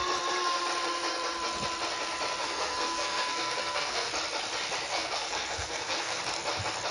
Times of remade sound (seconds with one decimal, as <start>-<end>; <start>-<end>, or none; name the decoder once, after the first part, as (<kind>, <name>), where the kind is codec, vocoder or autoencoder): 2.4-4.1 (codec, SNAC); 4.9-6.2